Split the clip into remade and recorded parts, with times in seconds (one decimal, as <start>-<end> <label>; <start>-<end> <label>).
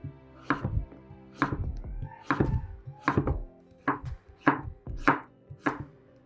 0.0-3.8 recorded; 3.8-6.3 remade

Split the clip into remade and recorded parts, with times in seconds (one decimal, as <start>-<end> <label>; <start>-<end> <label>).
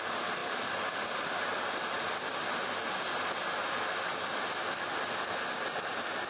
0.0-6.3 recorded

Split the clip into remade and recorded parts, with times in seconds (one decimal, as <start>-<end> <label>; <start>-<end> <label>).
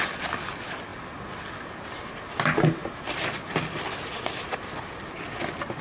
0.0-5.8 recorded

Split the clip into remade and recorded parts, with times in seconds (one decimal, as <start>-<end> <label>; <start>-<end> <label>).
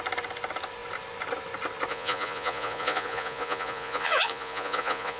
0.0-1.9 recorded; 1.9-5.2 remade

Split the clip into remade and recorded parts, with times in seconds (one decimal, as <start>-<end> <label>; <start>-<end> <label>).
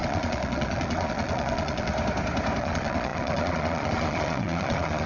0.0-1.9 remade; 1.9-2.6 recorded; 2.6-5.1 remade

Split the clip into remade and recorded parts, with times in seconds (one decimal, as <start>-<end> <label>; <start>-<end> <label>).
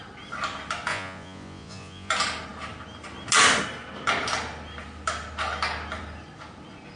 0.0-0.9 recorded; 0.9-2.1 remade; 2.1-7.0 recorded